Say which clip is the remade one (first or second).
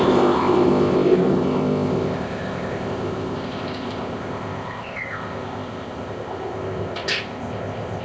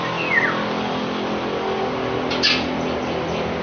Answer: first